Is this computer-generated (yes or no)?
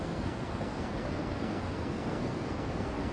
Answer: yes